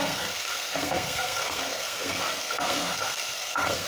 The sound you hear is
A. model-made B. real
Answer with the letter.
A